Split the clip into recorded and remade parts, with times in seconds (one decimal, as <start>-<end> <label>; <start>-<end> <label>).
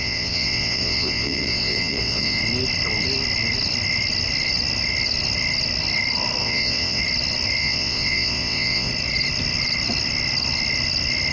0.0-2.4 remade; 2.4-6.4 recorded; 6.4-7.0 remade; 7.0-7.6 recorded; 7.6-8.9 remade; 8.9-11.3 recorded